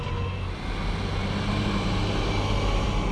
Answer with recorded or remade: recorded